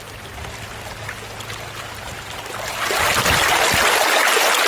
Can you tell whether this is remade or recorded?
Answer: recorded